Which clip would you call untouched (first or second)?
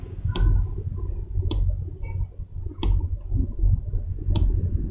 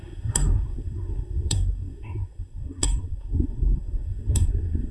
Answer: first